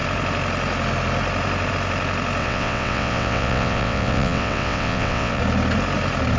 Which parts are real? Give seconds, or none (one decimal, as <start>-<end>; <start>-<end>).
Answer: 0.0-2.4; 5.4-6.4